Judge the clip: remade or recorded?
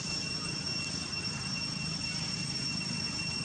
recorded